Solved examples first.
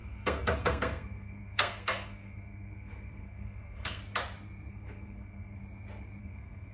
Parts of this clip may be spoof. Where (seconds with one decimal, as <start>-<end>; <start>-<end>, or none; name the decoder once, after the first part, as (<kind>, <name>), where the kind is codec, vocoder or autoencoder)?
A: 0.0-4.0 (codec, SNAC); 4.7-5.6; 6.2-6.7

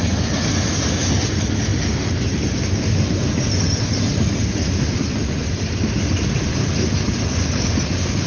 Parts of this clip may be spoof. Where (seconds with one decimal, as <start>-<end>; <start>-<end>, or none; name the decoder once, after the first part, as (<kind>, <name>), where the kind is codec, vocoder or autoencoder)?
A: none

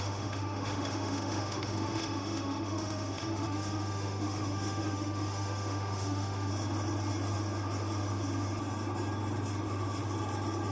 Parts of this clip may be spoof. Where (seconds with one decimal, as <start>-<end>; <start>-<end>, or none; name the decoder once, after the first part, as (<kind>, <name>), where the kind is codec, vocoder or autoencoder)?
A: 0.0-6.5 (autoencoder, DAC-VAE)

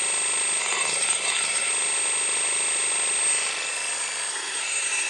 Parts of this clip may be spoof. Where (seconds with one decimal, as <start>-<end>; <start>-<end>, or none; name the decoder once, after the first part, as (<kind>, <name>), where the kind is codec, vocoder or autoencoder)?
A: 0.6-1.7 (codec, SNAC); 4.3-5.1

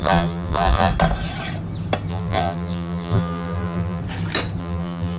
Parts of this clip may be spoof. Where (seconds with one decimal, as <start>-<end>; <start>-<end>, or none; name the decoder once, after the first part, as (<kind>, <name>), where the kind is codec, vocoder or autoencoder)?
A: 0.0-0.9 (vocoder, BigVGAN v2); 2.1-4.0; 4.6-5.2